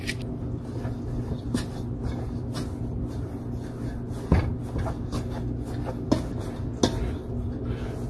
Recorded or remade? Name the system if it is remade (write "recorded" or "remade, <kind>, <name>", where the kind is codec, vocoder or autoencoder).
recorded